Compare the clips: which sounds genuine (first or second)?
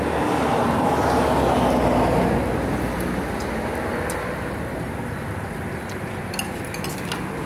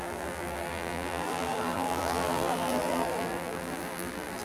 first